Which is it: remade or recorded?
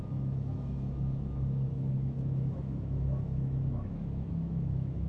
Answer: remade